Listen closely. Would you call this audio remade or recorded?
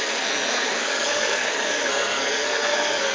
remade